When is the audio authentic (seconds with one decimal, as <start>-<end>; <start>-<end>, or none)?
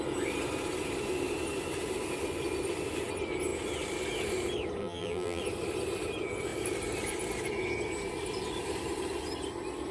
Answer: 0.0-4.8; 5.4-9.9